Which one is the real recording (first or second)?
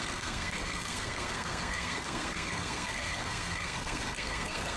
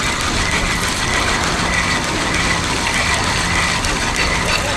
second